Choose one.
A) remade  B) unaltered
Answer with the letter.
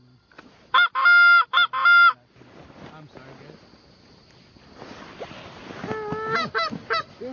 B